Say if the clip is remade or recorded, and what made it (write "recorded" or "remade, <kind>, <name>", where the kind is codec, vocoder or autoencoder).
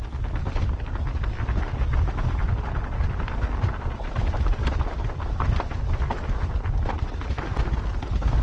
recorded